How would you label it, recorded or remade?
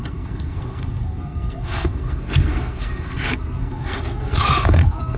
remade